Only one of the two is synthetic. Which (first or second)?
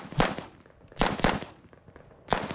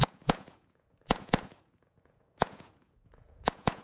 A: second